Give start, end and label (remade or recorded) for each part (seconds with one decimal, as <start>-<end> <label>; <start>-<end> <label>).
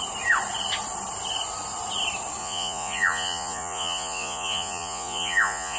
0.0-2.4 recorded; 2.4-5.8 remade